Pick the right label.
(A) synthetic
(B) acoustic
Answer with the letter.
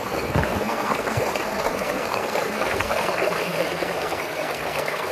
A